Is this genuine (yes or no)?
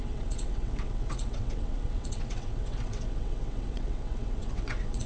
no